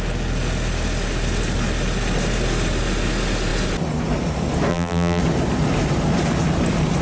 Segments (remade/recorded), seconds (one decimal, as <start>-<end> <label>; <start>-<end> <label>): 0.0-4.7 recorded; 4.7-5.2 remade; 5.2-7.0 recorded